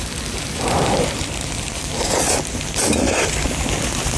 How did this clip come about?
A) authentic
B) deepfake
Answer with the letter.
B